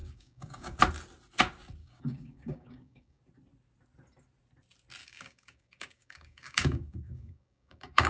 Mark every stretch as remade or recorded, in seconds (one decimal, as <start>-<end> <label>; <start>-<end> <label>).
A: 0.0-0.8 remade; 0.8-1.8 recorded; 1.8-3.2 remade; 3.2-5.0 recorded; 5.0-8.1 remade